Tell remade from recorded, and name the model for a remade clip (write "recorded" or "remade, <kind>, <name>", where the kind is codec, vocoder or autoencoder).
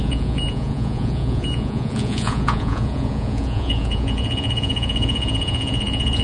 remade, vocoder, Vocos